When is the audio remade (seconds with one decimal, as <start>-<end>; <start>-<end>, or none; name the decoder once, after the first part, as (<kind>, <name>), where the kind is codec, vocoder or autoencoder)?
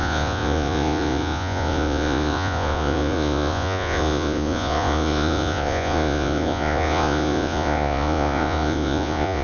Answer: 0.0-9.4 (vocoder, Vocos)